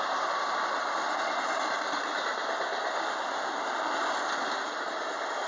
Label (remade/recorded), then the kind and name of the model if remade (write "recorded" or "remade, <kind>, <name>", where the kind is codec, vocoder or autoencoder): recorded